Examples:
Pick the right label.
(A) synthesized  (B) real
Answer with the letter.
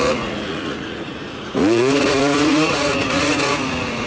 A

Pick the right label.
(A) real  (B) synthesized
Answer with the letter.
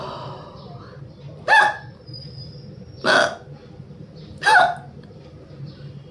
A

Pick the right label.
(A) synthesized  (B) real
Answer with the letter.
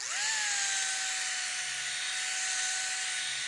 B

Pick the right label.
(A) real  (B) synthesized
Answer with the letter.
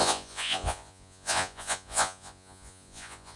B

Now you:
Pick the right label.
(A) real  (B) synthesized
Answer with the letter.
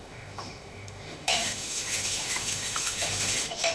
B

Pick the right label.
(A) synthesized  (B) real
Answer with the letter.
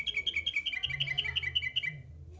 B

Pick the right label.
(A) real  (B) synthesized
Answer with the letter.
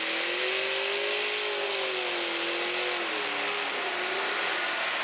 A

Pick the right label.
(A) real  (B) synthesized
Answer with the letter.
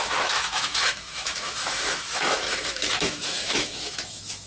B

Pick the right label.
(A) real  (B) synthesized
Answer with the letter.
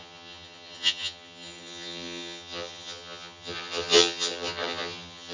B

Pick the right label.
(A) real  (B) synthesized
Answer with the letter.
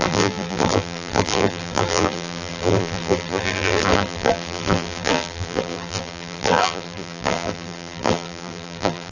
B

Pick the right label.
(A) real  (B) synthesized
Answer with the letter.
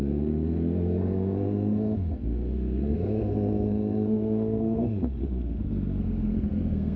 B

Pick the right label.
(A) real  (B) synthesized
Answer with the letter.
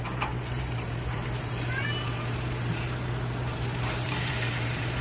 B